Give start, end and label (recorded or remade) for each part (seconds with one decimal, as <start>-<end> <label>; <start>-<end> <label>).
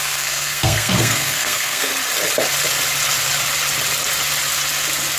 0.0-1.9 remade; 1.9-5.2 recorded